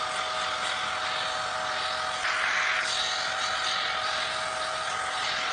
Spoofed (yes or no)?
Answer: no